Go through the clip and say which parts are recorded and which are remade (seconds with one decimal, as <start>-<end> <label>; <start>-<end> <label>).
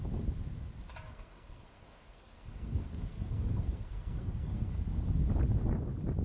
0.0-1.1 recorded; 1.1-4.8 remade; 4.8-6.2 recorded